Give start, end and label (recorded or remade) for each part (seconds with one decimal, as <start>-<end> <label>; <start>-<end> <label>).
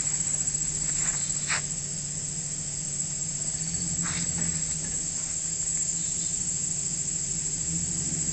0.0-8.3 recorded